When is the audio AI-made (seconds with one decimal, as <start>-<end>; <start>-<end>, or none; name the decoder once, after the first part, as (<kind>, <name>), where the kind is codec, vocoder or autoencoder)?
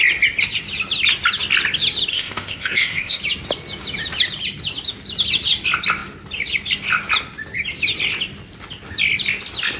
2.1-3.2 (codec, ZipCodec)